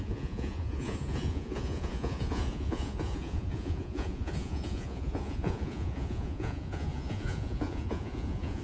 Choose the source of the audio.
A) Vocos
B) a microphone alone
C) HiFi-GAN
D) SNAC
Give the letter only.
A